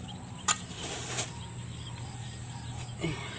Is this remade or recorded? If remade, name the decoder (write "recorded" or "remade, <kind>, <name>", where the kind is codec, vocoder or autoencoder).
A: recorded